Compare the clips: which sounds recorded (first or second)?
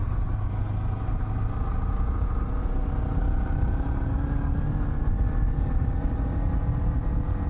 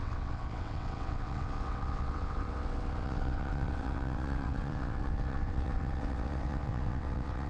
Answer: first